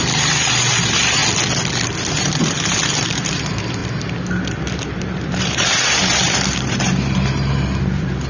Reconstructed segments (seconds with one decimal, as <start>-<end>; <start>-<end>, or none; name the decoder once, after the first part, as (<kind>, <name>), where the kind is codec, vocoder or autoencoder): 0.0-1.2 (vocoder, BigVGAN v2); 2.1-3.8; 4.7-8.3

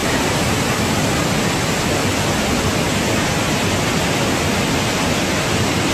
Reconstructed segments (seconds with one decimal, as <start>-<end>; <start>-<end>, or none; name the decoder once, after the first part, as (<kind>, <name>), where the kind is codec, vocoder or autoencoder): 0.0-0.8 (vocoder, BigVGAN v2)